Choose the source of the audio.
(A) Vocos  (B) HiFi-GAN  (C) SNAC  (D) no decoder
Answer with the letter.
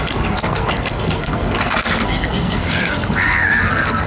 C